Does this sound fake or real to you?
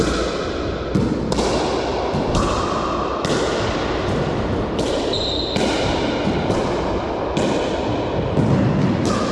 real